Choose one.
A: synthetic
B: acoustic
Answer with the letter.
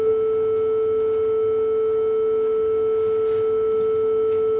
B